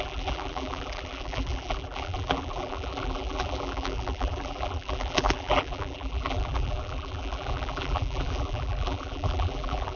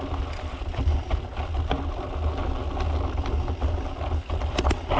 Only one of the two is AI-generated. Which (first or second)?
first